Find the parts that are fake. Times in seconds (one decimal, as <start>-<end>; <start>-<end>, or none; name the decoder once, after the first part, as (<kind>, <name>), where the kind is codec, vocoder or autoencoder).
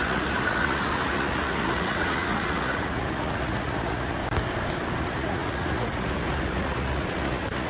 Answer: 0.0-4.2 (vocoder, Vocos); 5.0-7.7